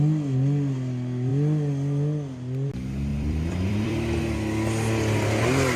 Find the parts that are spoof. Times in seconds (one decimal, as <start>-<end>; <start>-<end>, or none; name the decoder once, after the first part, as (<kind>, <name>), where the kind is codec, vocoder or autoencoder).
3.1-4.2 (vocoder, BigVGAN v2)